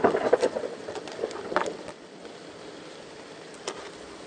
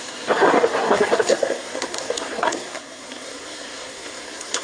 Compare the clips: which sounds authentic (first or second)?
first